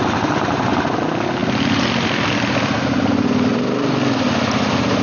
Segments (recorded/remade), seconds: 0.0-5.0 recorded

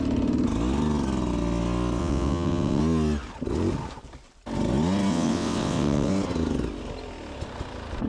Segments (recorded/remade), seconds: 0.0-2.0 recorded; 2.0-2.8 remade; 2.8-5.1 recorded; 5.1-6.1 remade; 6.1-8.1 recorded

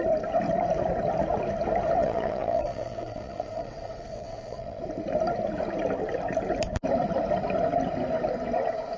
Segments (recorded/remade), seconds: 0.0-2.0 recorded; 2.0-4.8 remade; 4.8-9.0 recorded

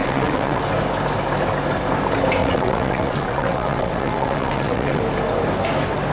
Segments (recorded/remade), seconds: 0.0-0.6 remade; 0.6-2.4 recorded; 2.4-5.0 remade; 5.0-6.1 recorded